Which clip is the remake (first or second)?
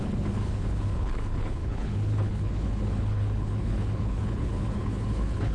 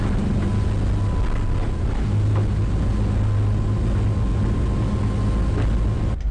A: first